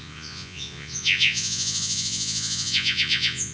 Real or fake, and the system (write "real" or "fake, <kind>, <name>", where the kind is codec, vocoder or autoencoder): fake, vocoder, Vocos